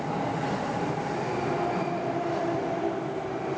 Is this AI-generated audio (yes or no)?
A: no